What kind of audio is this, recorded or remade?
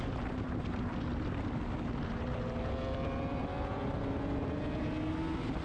recorded